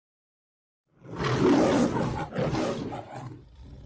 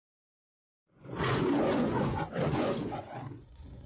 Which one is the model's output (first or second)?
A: second